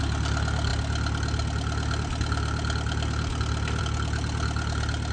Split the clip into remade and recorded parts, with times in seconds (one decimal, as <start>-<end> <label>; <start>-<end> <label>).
0.0-5.1 recorded